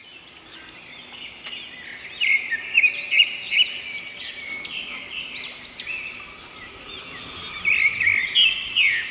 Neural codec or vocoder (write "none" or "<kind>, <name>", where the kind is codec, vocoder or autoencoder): none